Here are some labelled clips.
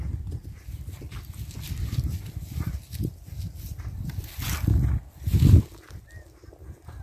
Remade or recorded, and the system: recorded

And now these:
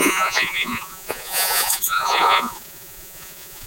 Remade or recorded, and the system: remade, vocoder, Vocos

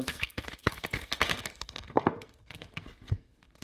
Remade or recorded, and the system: remade, codec, SNAC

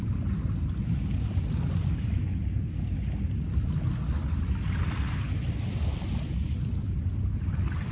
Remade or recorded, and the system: recorded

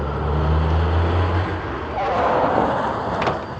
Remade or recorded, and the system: recorded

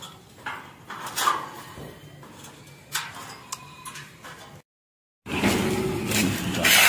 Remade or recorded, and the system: recorded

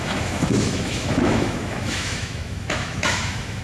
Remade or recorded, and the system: remade, autoencoder, DAC-VAE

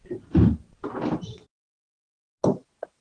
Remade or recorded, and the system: recorded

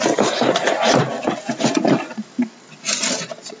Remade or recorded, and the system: recorded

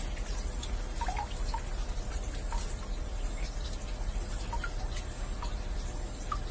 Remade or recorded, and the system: recorded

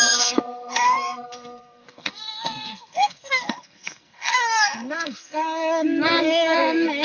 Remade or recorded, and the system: remade, codec, SNAC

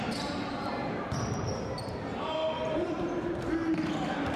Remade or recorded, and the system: remade, vocoder, BigVGAN v2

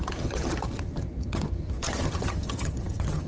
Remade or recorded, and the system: remade, vocoder, HiFi-GAN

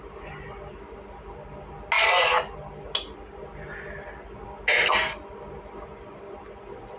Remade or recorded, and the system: recorded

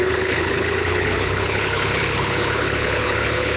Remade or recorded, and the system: remade, codec, HILCodec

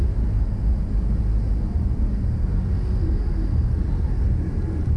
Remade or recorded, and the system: recorded